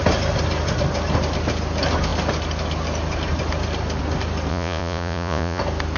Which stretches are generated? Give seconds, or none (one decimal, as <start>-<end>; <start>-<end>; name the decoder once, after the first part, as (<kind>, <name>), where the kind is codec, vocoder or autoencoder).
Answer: 4.5-5.6 (vocoder, Vocos)